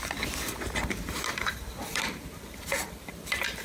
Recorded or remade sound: remade